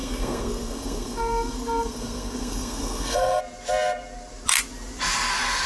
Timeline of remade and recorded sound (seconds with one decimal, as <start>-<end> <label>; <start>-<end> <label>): 0.0-3.4 remade; 3.4-5.7 recorded